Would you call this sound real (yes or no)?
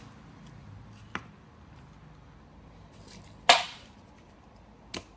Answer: yes